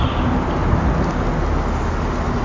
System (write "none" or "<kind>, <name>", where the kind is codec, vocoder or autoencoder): none